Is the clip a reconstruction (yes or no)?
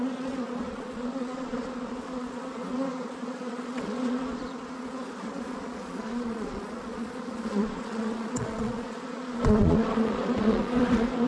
yes